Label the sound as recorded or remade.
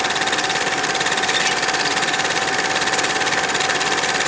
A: remade